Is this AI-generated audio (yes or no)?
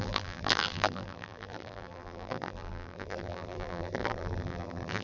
yes